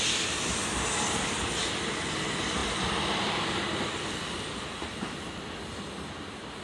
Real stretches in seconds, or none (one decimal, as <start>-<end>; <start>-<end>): 0.0-4.8; 5.4-6.6